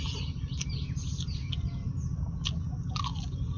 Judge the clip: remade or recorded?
recorded